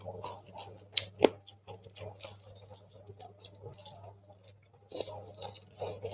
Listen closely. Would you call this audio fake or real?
real